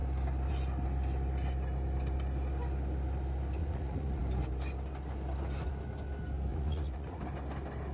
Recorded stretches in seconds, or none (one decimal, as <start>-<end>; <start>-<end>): 0.0-3.6; 4.2-6.5; 7.2-7.9